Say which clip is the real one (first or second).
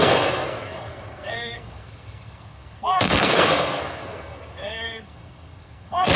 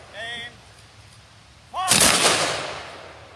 second